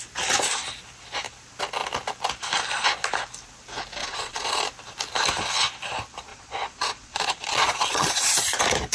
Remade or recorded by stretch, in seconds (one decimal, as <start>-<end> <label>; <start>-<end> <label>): 0.0-4.0 recorded; 4.0-4.6 remade; 4.6-6.3 recorded; 6.3-8.3 remade; 8.3-8.9 recorded